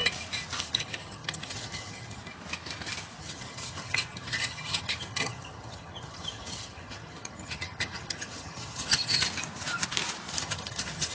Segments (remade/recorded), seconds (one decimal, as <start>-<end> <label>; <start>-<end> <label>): 0.0-0.6 recorded; 0.6-2.2 remade; 2.2-3.2 recorded; 3.2-9.3 remade; 9.3-10.4 recorded; 10.4-11.1 remade